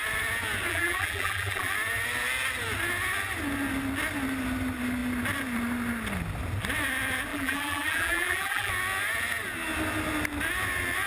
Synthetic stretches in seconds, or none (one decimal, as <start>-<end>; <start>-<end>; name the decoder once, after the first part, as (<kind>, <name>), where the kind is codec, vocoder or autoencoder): 0.7-1.7 (vocoder, BigVGAN v2); 7.3-8.7